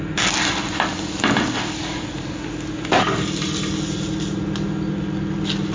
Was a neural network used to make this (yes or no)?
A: no